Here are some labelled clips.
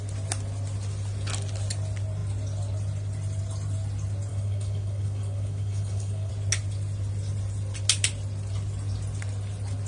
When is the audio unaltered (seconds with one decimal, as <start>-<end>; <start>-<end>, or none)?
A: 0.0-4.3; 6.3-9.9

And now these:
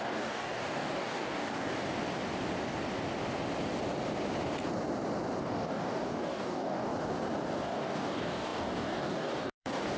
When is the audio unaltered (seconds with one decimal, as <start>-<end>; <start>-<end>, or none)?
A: 1.7-5.4; 6.9-7.6

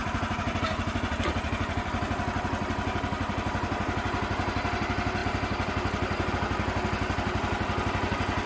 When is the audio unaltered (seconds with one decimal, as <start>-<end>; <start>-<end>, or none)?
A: 0.0-8.5

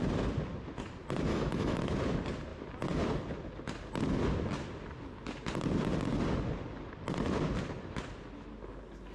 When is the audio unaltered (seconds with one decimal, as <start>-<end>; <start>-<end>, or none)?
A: 0.0-1.3; 1.8-9.1